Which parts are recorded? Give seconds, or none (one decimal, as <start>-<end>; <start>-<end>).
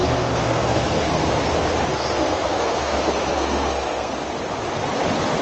1.3-1.9; 4.1-5.4